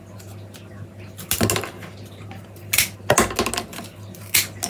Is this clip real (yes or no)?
yes